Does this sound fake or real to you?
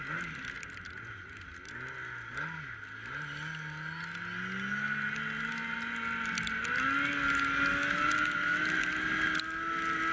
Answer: real